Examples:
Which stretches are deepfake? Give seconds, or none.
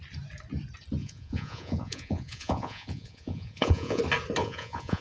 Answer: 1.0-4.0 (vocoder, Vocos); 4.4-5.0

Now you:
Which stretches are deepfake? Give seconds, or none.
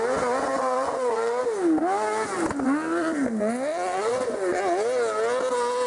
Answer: 0.6-1.4 (vocoder, Vocos); 3.7-4.6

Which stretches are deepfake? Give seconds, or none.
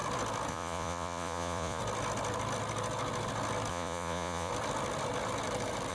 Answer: 0.5-1.8 (vocoder, Vocos); 3.7-4.5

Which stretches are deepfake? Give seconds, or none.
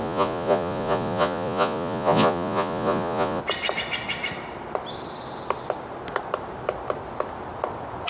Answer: 0.0-3.4 (vocoder, Vocos)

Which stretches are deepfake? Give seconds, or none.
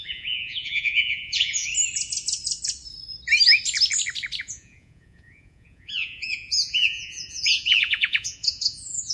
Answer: 0.0-1.7 (vocoder, Vocos); 4.4-9.1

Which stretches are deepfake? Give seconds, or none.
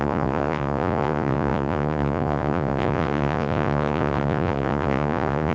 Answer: 0.0-5.5 (vocoder, Vocos)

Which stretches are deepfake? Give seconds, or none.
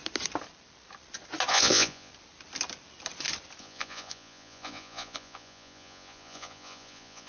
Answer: 1.5-2.1 (vocoder, Vocos); 3.6-7.3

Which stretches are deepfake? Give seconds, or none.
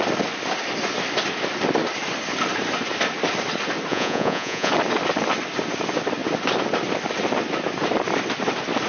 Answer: 3.9-4.7 (vocoder, Vocos)